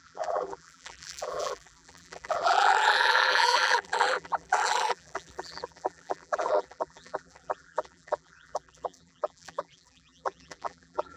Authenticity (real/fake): fake